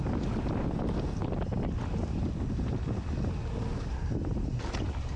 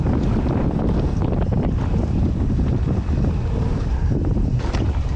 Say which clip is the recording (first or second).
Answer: first